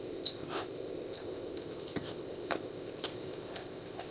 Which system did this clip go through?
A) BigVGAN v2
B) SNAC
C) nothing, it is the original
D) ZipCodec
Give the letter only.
D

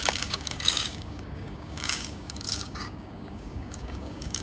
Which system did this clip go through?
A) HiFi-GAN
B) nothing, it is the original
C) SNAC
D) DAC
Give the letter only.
D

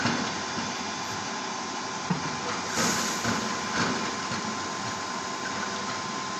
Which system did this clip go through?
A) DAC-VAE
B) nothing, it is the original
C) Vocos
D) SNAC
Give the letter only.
B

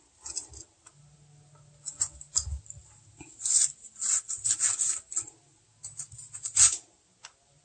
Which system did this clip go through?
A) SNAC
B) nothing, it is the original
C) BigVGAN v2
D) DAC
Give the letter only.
B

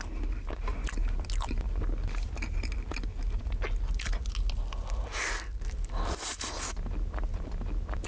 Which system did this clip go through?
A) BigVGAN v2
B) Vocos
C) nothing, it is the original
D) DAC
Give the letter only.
C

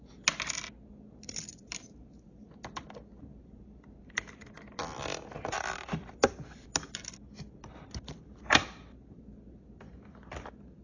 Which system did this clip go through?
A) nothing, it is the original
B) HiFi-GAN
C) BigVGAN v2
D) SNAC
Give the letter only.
A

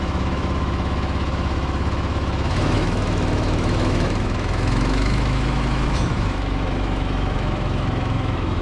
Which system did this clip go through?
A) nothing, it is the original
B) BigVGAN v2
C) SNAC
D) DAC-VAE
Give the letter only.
D